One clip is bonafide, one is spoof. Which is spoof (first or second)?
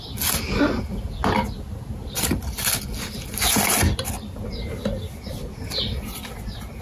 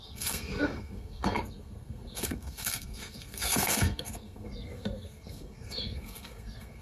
second